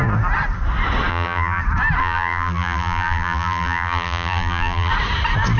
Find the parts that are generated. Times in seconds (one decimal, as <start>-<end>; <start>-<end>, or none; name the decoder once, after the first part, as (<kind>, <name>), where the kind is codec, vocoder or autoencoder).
1.1-1.6 (vocoder, BigVGAN v2); 2.0-4.9